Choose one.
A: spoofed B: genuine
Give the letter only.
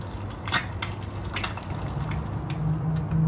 B